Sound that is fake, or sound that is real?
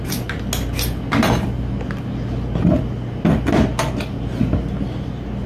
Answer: real